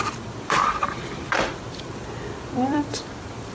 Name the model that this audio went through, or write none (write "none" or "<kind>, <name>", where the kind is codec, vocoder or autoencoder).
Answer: vocoder, BigVGAN v2